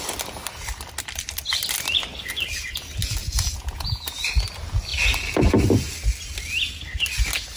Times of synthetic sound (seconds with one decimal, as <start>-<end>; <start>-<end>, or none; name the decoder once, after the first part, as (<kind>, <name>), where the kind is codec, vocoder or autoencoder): 3.2-4.0 (vocoder, Vocos)